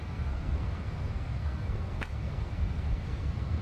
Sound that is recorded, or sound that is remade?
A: remade